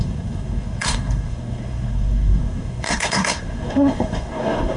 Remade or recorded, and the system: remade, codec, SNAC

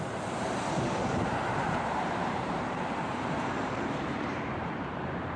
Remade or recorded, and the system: remade, vocoder, BigVGAN v2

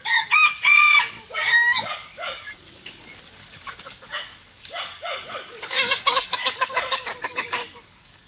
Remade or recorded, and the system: remade, codec, DAC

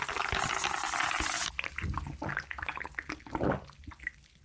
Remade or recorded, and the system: recorded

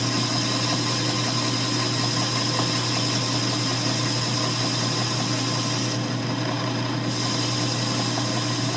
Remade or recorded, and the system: recorded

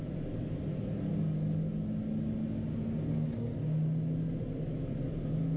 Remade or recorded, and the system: recorded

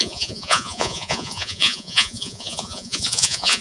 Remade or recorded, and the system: remade, vocoder, Vocos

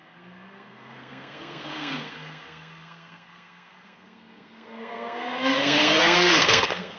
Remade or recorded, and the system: remade, codec, SNAC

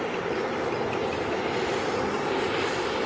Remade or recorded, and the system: recorded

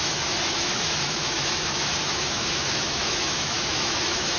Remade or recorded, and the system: remade, autoencoder, DAC-VAE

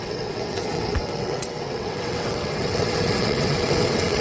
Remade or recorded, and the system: remade, vocoder, WaveNeXt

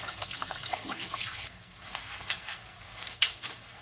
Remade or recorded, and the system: remade, codec, SNAC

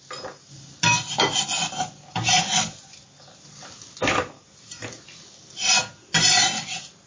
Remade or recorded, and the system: recorded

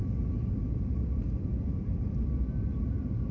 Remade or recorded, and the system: recorded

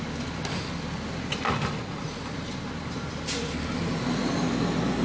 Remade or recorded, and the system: recorded